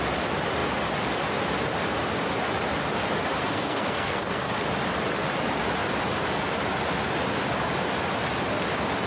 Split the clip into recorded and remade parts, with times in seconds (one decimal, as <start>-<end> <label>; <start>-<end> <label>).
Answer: 0.0-3.4 recorded; 3.4-4.5 remade; 4.5-9.1 recorded